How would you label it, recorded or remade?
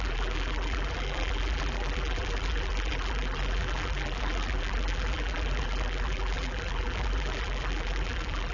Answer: remade